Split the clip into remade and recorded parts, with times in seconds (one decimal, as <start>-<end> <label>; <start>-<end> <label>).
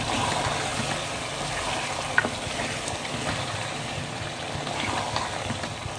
0.0-0.7 recorded; 0.7-4.2 remade; 4.2-6.0 recorded